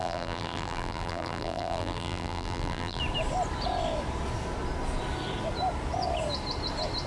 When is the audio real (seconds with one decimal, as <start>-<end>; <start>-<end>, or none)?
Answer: 3.0-7.1